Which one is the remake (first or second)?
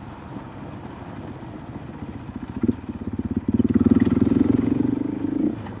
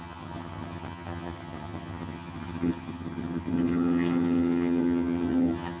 second